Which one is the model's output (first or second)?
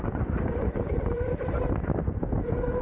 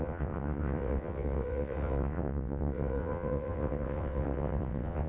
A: second